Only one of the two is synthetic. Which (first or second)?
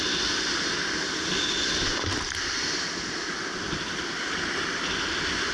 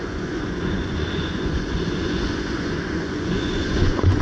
second